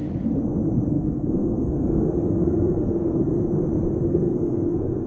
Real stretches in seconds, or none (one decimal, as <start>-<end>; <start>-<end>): 0.0-0.9; 3.3-4.1

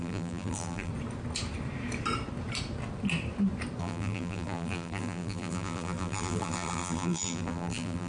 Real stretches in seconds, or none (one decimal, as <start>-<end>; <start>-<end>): 0.9-3.8

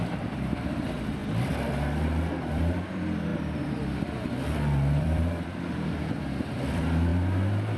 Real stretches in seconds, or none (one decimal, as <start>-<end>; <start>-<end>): 1.2-2.5; 3.3-5.0

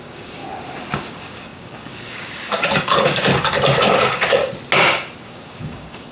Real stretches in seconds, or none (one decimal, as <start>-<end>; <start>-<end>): 0.4-1.1; 3.3-3.8; 4.4-5.2

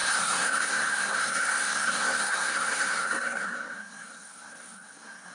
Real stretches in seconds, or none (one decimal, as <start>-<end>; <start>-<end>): none

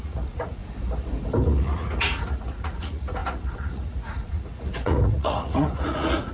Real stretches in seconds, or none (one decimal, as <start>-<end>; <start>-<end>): 0.6-1.4